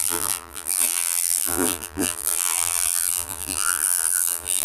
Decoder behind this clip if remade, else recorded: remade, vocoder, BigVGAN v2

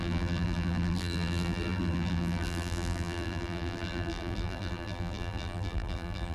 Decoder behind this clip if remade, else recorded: remade, vocoder, BigVGAN v2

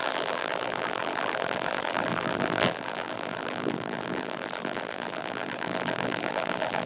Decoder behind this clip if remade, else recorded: remade, vocoder, BigVGAN v2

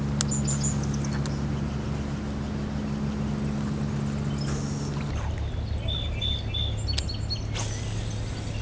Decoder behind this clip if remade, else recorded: recorded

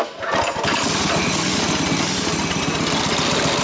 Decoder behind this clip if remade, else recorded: recorded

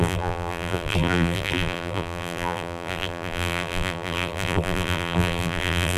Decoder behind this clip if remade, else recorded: remade, vocoder, BigVGAN v2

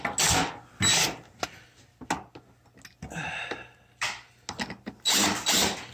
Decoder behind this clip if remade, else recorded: recorded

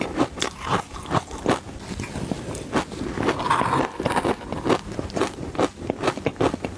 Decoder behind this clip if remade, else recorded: recorded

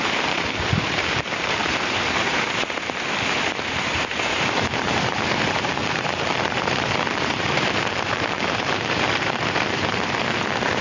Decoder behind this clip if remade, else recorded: remade, vocoder, BigVGAN v2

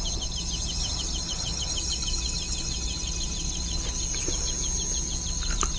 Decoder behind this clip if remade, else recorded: recorded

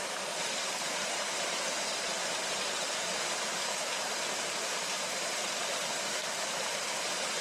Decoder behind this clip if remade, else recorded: remade, vocoder, BigVGAN v2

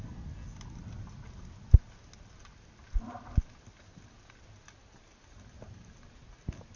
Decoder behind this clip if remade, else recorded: recorded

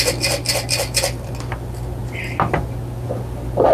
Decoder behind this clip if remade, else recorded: recorded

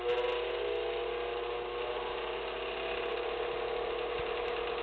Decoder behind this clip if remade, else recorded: recorded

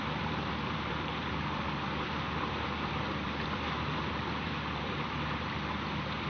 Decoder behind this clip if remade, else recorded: remade, vocoder, BigVGAN v2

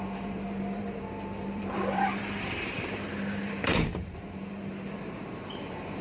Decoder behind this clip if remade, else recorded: remade, vocoder, BigVGAN v2